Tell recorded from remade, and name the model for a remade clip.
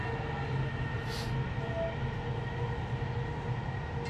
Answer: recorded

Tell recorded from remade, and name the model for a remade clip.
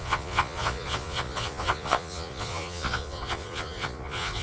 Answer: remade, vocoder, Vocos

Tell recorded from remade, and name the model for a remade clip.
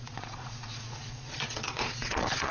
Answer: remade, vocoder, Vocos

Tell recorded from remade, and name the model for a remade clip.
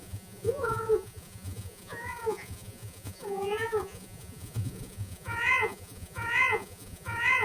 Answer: remade, vocoder, Vocos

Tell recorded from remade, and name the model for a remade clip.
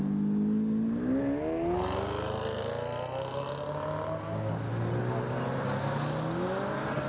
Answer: recorded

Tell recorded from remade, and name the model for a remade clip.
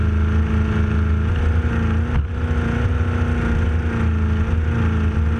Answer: recorded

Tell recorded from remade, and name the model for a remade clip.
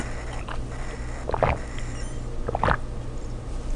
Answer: recorded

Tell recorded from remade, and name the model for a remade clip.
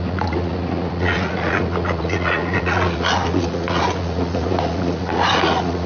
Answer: remade, vocoder, Vocos